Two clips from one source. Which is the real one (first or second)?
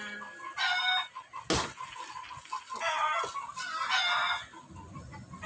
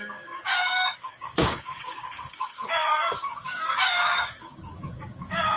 first